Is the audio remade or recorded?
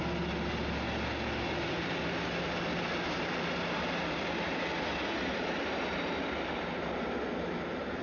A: recorded